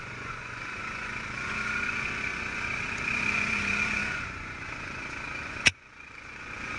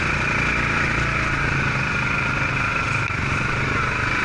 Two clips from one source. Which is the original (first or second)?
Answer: second